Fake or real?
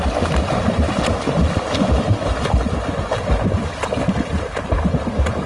real